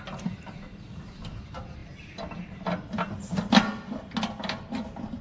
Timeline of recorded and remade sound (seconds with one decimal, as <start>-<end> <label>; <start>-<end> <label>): 0.0-5.2 recorded